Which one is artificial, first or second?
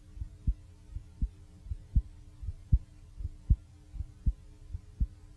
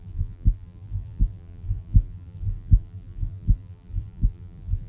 second